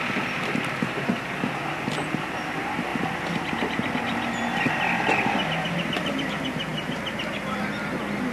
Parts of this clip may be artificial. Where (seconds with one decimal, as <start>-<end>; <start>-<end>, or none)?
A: none